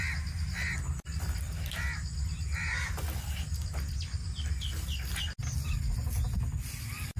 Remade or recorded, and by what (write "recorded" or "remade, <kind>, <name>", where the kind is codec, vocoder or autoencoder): recorded